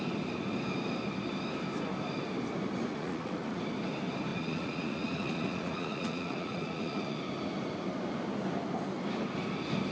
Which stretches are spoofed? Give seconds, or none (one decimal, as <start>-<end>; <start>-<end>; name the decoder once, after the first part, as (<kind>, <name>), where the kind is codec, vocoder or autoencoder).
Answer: 2.9-3.6 (vocoder, Vocos); 4.3-7.2

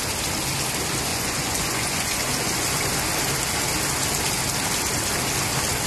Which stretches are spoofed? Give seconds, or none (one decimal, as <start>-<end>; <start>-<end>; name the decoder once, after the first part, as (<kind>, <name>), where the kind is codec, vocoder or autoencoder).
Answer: 1.1-2.8 (vocoder, Vocos)

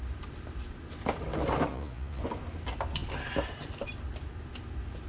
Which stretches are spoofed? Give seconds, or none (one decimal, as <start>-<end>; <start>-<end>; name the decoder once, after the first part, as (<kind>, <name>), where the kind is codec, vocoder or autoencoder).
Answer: 1.7-2.2 (vocoder, Vocos)

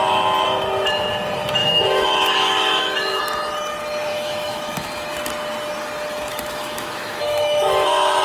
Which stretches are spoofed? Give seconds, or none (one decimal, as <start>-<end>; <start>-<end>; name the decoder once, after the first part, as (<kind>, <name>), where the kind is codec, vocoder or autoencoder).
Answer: 1.6-3.2 (autoencoder, DAC-VAE); 4.1-4.9; 6.3-8.2

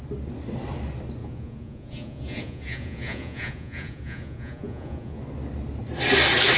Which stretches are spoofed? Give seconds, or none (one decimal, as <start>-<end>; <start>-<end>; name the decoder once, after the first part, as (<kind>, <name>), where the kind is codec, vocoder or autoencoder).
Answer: 1.2-5.2 (vocoder, Vocos)

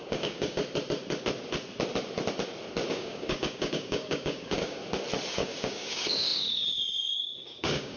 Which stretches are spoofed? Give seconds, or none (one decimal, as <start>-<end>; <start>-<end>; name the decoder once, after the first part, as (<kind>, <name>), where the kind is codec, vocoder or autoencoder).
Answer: 0.0-0.6 (codec, DAC); 2.9-4.8; 5.3-8.0

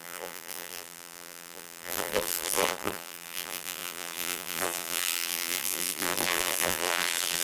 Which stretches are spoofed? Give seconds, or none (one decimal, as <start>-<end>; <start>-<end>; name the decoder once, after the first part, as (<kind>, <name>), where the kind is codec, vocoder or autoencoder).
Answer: 0.0-7.4 (vocoder, BigVGAN v2)